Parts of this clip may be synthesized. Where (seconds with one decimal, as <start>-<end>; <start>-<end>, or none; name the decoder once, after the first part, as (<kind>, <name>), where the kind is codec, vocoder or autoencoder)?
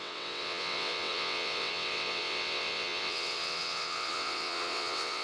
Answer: 0.0-5.2 (vocoder, WaveNeXt)